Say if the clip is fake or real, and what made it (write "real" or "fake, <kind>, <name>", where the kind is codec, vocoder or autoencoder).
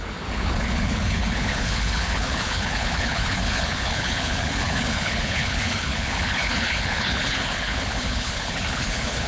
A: fake, codec, HILCodec